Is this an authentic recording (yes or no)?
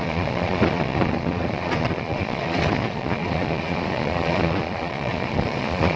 no